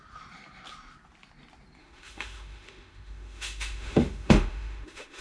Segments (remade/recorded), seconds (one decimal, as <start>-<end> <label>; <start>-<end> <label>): 0.0-1.8 recorded; 1.8-5.2 remade